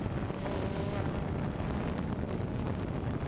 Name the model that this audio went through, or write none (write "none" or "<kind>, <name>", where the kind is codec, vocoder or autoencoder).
vocoder, BigVGAN v2